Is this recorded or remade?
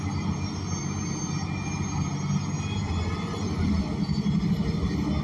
recorded